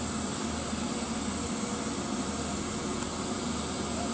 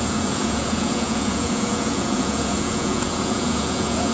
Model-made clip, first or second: second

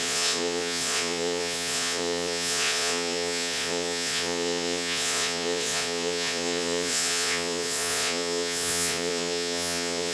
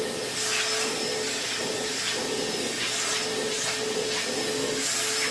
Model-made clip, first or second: first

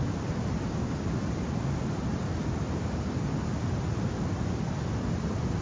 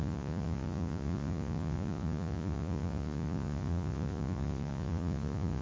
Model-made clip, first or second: second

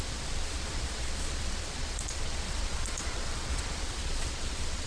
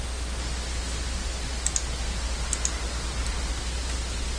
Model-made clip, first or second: first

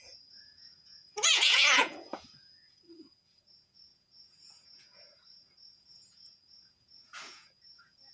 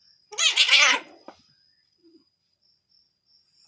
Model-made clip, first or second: first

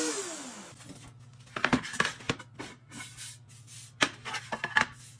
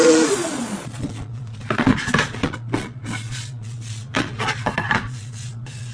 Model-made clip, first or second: second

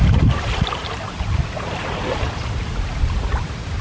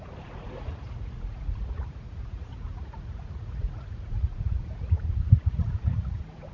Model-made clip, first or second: second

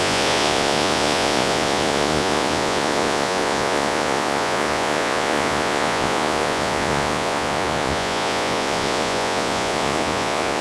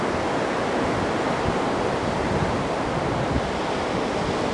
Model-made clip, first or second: first